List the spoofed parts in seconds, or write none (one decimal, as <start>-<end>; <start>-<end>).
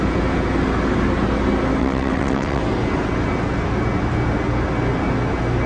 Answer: 1.8-2.6